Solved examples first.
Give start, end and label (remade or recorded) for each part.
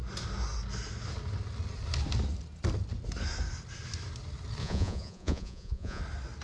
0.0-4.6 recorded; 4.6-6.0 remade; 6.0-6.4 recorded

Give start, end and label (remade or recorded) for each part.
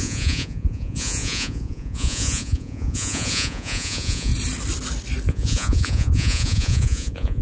0.0-4.3 remade; 4.3-5.3 recorded; 5.3-7.4 remade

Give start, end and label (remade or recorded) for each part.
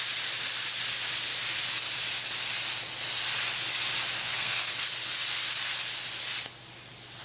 0.0-4.2 recorded; 4.2-4.7 remade; 4.7-7.2 recorded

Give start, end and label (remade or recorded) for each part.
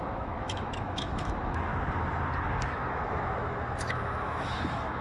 0.0-1.7 remade; 1.7-2.7 recorded; 2.7-5.0 remade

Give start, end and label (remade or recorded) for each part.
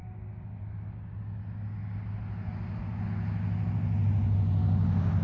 0.0-5.2 recorded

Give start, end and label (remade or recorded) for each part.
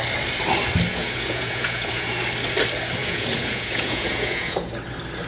0.0-0.9 recorded; 0.9-2.1 remade; 2.1-3.0 recorded; 3.0-4.7 remade; 4.7-5.3 recorded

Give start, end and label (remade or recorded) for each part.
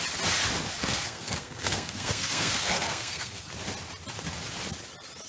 0.0-0.8 recorded; 0.8-3.5 remade; 3.5-5.3 recorded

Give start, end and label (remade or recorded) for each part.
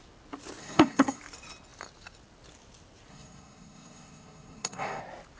0.0-0.6 recorded; 0.6-1.2 remade; 1.2-3.1 recorded; 3.1-5.0 remade; 5.0-5.4 recorded